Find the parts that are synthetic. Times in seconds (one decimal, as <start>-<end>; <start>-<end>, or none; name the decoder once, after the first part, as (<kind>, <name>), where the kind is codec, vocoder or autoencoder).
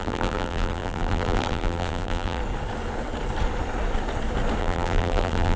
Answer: 0.0-2.4 (vocoder, BigVGAN v2); 4.6-5.6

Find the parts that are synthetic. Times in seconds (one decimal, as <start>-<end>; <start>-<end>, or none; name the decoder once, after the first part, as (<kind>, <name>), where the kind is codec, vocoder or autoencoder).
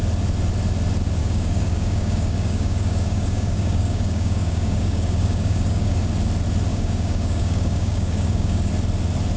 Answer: 1.2-6.0 (codec, DAC); 6.7-8.7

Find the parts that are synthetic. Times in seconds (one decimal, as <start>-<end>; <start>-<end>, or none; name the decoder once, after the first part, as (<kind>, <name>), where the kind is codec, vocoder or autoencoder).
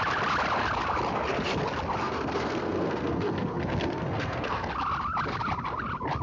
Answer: 2.0-4.7 (codec, SNAC)